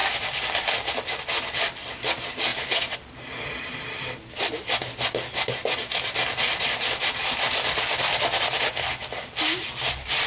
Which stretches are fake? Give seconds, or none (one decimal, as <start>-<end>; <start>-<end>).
none